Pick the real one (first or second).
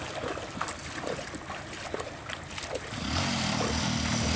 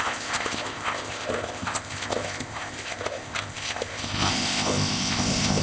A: first